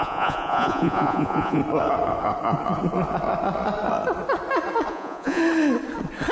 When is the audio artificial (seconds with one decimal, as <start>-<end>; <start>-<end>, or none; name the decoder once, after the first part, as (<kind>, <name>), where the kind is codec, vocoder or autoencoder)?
0.0-1.6 (vocoder, Vocos); 4.9-5.4

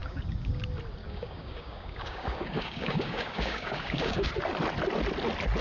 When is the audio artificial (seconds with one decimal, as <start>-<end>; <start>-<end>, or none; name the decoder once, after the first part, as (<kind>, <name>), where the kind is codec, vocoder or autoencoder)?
0.0-0.6 (codec, DAC); 1.0-4.3

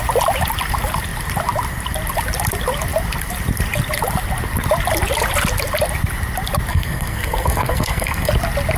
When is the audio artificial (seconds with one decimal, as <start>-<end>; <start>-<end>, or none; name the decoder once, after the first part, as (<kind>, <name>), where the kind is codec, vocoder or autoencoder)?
6.7-8.3 (codec, SNAC)

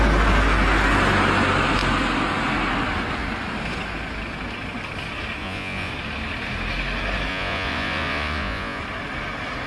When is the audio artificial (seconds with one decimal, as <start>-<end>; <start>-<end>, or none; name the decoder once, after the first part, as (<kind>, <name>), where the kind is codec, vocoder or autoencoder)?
5.4-5.9 (vocoder, Vocos); 7.3-8.8

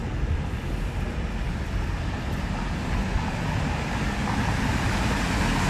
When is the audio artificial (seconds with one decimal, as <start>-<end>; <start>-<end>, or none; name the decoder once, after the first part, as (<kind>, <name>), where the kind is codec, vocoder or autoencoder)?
none

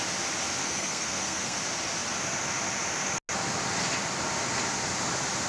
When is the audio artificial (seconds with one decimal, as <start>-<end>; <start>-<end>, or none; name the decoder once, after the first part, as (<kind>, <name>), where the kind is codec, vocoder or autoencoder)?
0.6-1.6 (codec, SNAC)

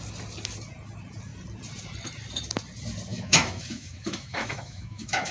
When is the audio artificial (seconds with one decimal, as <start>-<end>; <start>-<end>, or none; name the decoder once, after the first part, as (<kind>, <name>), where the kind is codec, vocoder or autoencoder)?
3.1-5.3 (autoencoder, DAC-VAE)

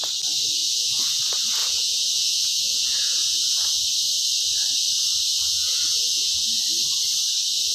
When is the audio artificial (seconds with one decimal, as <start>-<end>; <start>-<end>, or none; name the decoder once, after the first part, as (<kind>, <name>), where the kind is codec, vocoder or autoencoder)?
0.6-1.2 (vocoder, Vocos); 1.6-3.8; 5.3-6.6